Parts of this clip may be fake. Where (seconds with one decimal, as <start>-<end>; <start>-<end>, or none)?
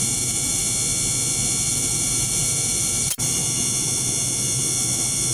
0.0-0.6; 1.7-3.4